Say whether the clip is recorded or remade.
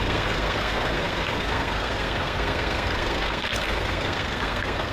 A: remade